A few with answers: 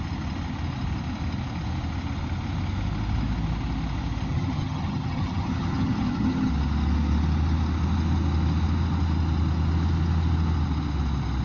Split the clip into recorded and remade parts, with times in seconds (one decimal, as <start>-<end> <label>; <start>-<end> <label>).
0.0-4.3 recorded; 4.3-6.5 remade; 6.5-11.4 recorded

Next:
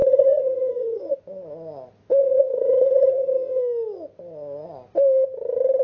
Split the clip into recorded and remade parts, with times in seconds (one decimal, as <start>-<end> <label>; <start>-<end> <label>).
0.0-1.2 remade; 1.2-2.2 recorded; 2.2-3.6 remade; 3.6-5.8 recorded

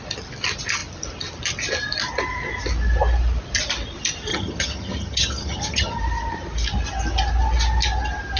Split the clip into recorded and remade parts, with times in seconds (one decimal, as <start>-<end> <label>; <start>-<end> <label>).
0.0-4.3 recorded; 4.3-6.0 remade; 6.0-8.4 recorded